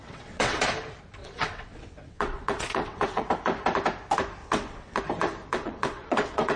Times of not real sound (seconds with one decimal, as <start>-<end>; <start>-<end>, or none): 0.0-0.6; 1.2-3.3; 4.4-5.0; 5.5-6.6